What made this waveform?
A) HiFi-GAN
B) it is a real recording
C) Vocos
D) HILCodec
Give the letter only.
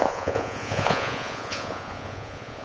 C